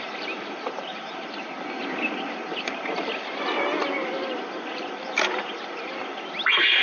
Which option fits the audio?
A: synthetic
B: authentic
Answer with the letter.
B